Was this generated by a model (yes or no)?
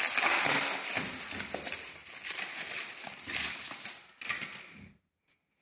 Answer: no